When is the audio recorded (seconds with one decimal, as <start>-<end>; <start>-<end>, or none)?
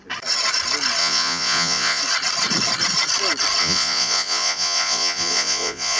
0.0-1.0; 2.0-3.6